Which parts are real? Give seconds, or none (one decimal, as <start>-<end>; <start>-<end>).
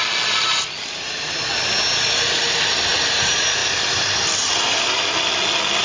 0.0-3.6; 5.3-5.8